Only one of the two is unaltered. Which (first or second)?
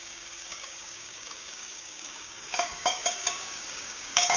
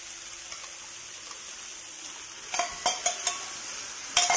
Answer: second